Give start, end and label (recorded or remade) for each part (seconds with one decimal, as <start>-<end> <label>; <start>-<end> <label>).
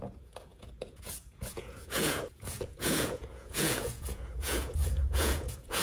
0.0-5.8 remade